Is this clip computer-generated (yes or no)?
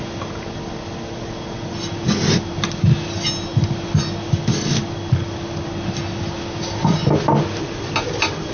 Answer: no